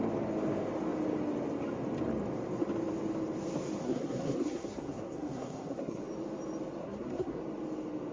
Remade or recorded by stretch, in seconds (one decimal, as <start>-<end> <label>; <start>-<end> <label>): 0.0-3.8 recorded; 3.8-6.0 remade; 6.0-6.8 recorded; 6.8-7.4 remade; 7.4-8.1 recorded

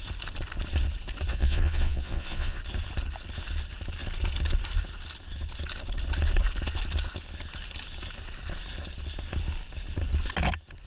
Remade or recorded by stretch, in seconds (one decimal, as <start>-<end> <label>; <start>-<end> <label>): 0.0-1.3 recorded; 1.3-2.6 remade; 2.6-10.9 recorded